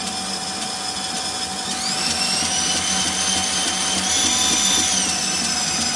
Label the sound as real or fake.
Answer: real